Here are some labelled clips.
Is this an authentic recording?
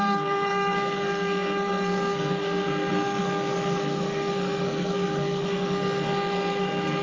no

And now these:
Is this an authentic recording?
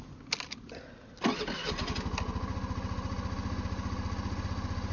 yes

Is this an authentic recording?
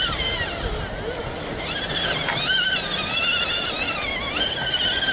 yes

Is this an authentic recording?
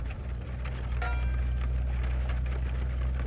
yes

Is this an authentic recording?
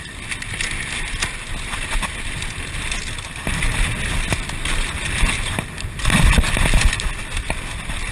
yes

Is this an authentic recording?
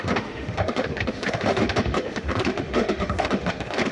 no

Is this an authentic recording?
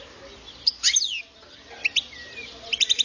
yes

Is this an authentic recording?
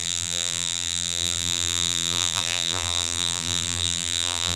no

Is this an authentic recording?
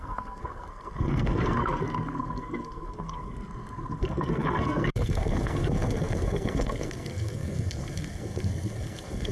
no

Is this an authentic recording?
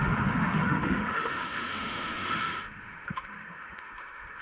no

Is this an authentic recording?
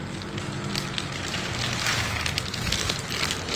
yes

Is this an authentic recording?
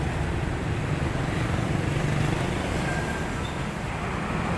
yes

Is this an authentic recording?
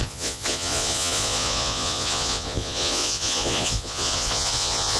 no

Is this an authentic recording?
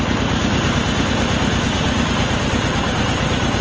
yes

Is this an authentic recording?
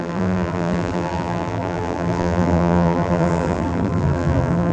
no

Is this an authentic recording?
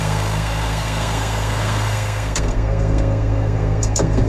no